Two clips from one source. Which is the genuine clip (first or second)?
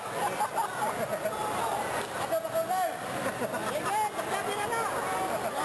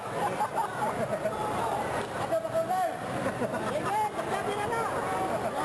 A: first